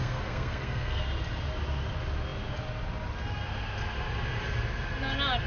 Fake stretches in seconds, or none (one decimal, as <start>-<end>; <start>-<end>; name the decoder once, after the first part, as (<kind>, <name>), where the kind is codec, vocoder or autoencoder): 0.0-1.0 (codec, SNAC)